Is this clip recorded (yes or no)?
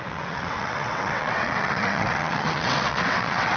no